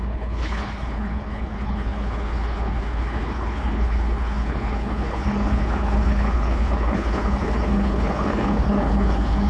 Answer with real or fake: fake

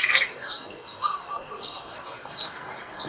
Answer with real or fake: fake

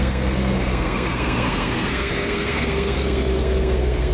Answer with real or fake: fake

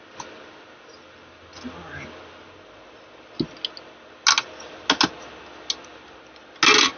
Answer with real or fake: real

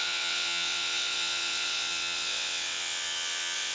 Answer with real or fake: fake